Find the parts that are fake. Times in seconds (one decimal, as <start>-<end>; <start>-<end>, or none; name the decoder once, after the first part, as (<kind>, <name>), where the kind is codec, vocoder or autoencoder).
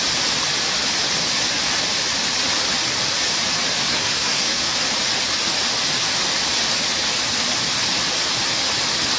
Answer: 3.8-4.6 (codec, SNAC)